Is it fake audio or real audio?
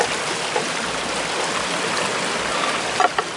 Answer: real